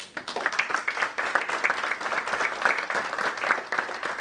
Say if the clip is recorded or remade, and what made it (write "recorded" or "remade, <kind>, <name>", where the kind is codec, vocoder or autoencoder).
recorded